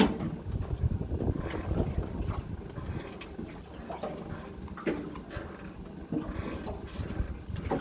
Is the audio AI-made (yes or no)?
no